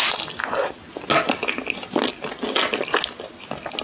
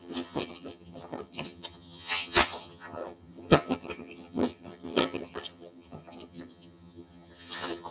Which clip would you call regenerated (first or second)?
second